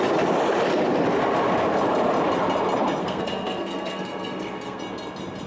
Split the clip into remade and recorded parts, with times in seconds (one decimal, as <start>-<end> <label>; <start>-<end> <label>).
0.0-3.0 recorded; 3.0-4.8 remade; 4.8-5.5 recorded